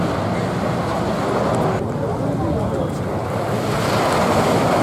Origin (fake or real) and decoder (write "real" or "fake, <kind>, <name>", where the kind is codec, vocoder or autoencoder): real